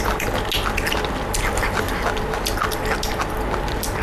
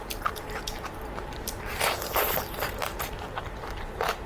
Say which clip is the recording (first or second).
first